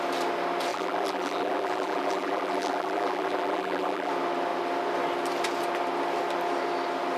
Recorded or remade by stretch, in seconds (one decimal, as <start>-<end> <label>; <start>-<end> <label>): 0.0-0.7 recorded; 0.7-4.1 remade; 4.1-7.2 recorded